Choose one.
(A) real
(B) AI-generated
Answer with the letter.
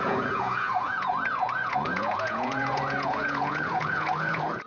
B